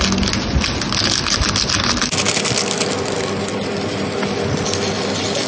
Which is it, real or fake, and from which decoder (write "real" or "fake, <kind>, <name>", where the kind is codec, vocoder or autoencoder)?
real